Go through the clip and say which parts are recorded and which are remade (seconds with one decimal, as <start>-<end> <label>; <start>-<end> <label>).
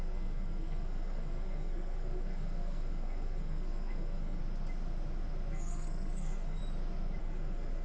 0.0-4.4 remade; 4.4-5.5 recorded; 5.5-6.6 remade; 6.6-7.2 recorded; 7.2-7.8 remade